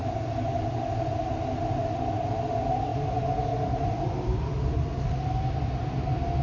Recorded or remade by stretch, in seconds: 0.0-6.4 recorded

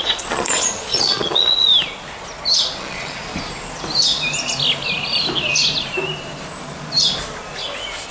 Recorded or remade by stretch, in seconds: 0.0-1.7 remade; 1.7-2.8 recorded; 2.8-3.3 remade; 3.3-8.1 recorded